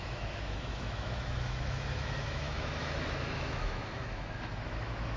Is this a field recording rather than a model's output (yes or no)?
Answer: no